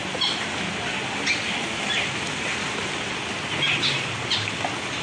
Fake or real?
real